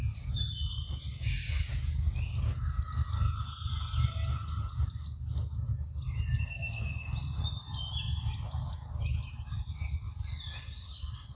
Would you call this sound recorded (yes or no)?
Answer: yes